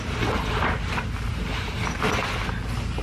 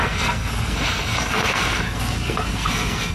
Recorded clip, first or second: first